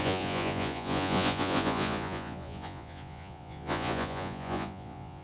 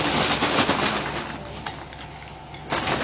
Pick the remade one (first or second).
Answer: first